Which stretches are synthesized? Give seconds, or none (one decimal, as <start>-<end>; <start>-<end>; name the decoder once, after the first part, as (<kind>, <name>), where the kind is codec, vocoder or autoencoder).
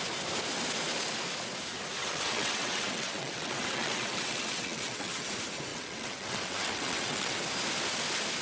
2.0-5.3 (vocoder, WaveNeXt); 5.7-7.4